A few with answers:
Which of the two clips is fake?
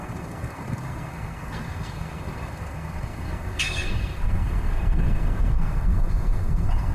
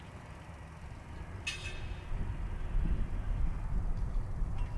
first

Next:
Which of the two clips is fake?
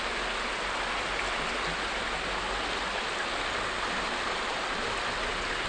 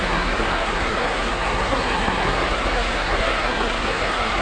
second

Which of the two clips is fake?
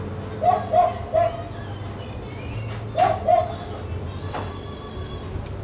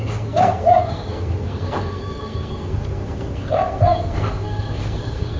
second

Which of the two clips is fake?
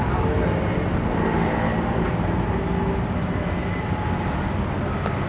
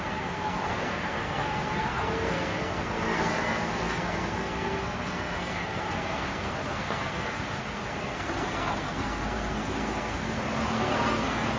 second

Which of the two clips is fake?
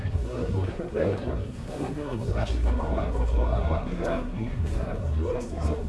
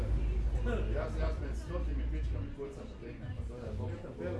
first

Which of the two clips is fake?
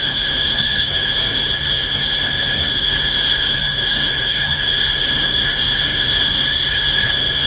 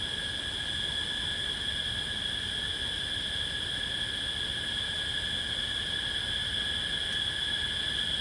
first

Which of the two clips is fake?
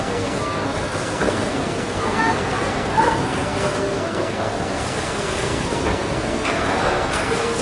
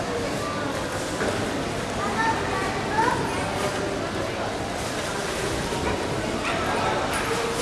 first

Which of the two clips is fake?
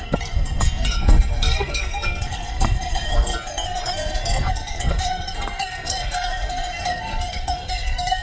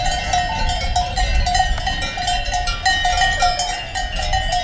first